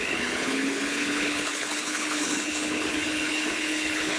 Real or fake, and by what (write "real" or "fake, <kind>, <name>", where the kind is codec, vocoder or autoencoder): fake, codec, HILCodec